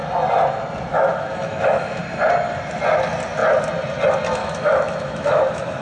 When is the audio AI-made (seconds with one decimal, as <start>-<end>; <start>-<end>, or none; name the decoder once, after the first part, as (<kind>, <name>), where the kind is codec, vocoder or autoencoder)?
0.9-2.0 (autoencoder, DAC-VAE); 4.4-5.8

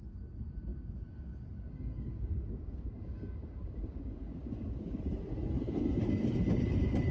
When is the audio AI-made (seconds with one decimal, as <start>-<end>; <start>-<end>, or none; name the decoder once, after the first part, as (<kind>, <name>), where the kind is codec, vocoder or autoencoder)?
0.7-5.0 (codec, DAC)

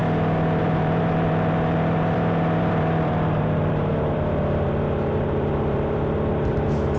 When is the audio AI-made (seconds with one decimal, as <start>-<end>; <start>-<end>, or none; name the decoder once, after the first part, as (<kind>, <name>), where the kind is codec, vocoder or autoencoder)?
0.6-7.0 (vocoder, BigVGAN v2)

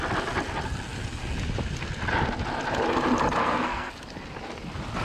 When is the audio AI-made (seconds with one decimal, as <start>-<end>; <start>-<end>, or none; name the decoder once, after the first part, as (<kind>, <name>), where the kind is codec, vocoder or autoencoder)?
3.4-3.9 (codec, SNAC)

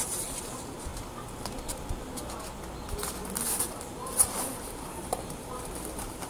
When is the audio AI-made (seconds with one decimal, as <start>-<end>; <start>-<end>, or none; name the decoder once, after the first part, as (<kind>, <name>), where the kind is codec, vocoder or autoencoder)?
0.0-0.9 (vocoder, BigVGAN v2); 3.6-6.3